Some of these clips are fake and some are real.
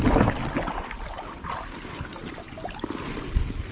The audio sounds real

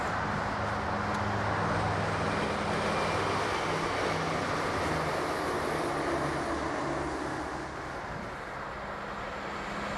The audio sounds real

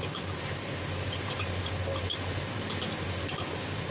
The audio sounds real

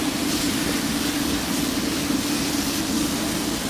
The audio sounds real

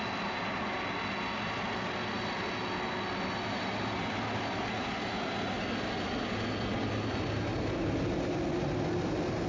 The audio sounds real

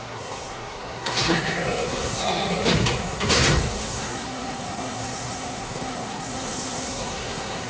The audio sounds fake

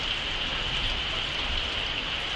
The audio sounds real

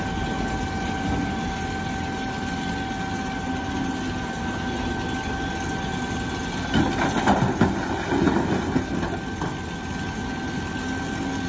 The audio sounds real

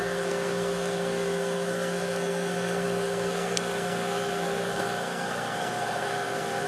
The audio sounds fake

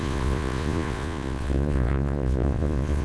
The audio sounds fake